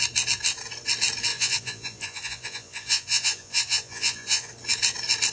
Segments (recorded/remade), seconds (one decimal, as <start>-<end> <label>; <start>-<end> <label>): 0.0-1.3 recorded; 1.3-4.5 remade; 4.5-5.3 recorded